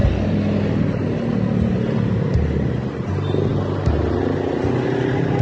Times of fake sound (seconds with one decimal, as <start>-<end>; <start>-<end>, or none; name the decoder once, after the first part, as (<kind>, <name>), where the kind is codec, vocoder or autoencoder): none